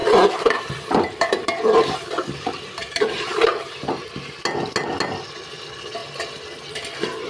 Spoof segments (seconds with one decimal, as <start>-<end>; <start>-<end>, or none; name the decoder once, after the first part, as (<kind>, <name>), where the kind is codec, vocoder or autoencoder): 0.0-4.4 (vocoder, BigVGAN v2)